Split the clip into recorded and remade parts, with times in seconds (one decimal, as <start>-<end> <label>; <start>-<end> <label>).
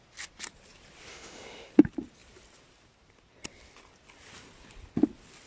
0.0-1.1 recorded; 1.1-1.7 remade; 1.7-5.5 recorded